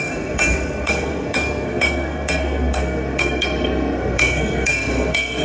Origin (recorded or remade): remade